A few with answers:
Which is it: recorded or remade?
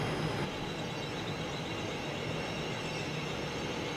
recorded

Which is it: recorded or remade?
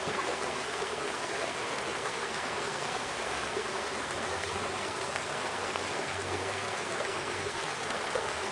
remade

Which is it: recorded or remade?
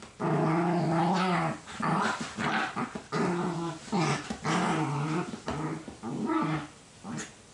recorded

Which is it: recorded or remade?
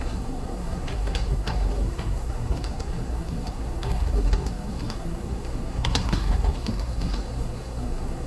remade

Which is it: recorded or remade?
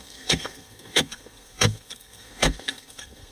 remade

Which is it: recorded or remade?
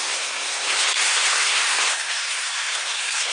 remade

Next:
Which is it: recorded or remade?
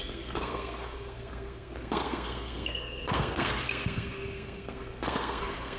remade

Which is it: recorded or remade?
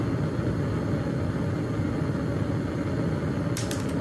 recorded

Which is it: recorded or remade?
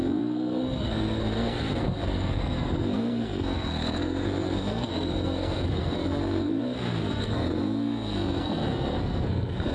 remade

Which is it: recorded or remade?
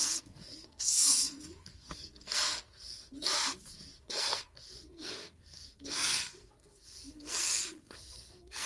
remade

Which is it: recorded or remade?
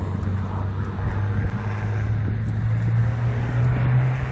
recorded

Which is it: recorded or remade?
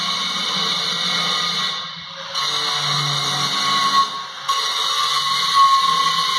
recorded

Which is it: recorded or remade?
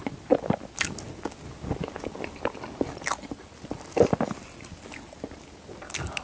recorded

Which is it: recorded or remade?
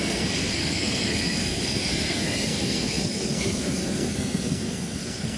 remade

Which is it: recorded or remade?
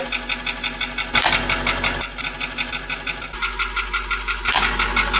recorded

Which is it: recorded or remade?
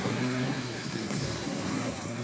remade